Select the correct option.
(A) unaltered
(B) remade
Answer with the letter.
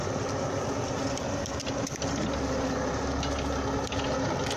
A